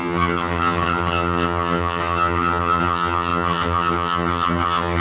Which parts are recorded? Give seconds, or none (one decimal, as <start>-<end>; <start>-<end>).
none

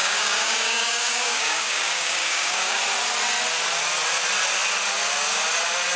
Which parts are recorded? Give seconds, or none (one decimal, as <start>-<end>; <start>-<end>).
2.8-6.0

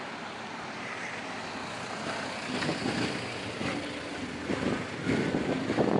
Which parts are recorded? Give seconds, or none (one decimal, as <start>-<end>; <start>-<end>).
0.0-6.0